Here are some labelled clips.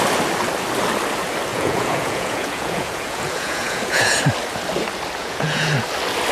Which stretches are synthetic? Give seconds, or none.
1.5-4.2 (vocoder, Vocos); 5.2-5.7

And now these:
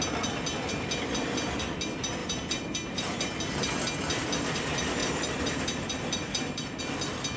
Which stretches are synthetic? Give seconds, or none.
2.2-3.3 (vocoder, BigVGAN v2); 5.0-6.8

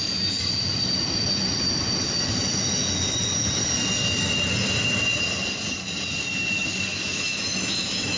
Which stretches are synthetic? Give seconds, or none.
6.9-8.2 (autoencoder, DAC-VAE)

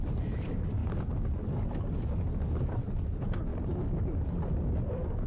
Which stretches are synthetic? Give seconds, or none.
0.0-0.8 (vocoder, BigVGAN v2); 2.4-3.5; 4.5-5.3

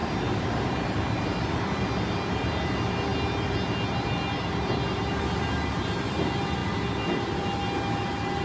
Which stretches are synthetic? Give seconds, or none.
none